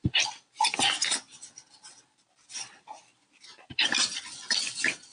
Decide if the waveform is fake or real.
fake